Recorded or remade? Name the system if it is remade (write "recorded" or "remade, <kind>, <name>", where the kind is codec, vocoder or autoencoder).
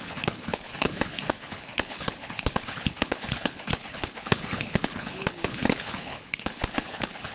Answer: remade, codec, HILCodec